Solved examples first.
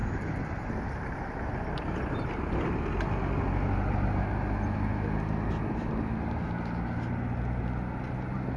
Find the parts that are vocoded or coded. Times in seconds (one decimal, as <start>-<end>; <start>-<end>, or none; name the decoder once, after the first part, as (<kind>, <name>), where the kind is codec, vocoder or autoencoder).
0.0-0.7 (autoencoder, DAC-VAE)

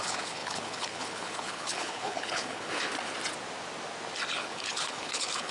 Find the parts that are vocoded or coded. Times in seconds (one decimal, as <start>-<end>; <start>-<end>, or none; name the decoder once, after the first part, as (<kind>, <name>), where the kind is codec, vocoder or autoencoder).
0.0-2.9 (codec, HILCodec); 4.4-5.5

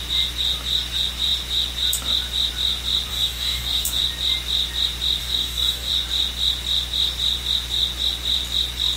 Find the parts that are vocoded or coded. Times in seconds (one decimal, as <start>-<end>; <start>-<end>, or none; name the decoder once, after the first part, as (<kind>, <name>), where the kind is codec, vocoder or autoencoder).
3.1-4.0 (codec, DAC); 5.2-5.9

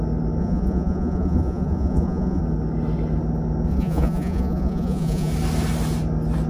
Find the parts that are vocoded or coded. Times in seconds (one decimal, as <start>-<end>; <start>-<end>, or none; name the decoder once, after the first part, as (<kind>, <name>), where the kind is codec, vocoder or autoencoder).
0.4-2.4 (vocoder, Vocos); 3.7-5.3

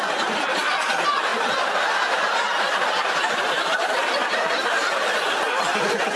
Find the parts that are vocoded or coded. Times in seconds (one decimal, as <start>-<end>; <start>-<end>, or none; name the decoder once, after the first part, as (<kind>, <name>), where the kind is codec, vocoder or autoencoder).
none

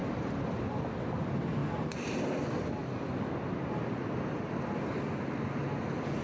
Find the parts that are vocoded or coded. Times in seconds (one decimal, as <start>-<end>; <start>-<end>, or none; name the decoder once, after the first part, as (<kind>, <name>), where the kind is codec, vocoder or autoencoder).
none